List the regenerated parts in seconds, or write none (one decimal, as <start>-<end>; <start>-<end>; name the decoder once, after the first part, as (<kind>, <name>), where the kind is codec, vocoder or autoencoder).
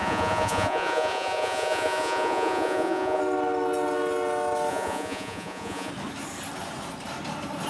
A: 0.0-3.2 (vocoder, Vocos); 4.7-5.9